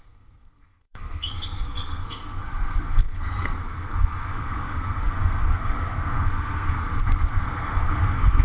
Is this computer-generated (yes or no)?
yes